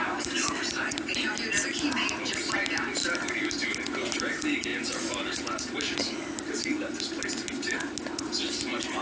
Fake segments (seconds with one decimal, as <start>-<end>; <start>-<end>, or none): none